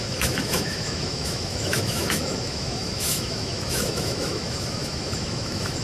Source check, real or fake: fake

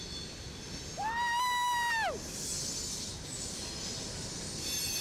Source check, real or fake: real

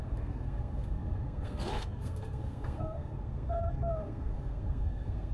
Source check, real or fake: fake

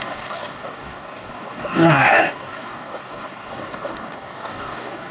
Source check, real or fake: fake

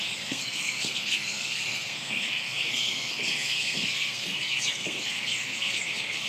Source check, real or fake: fake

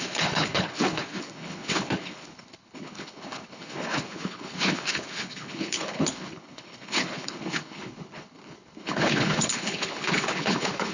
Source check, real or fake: fake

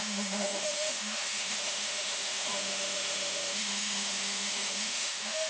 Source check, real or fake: fake